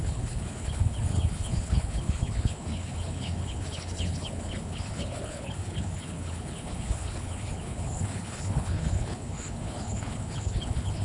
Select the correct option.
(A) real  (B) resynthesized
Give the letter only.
B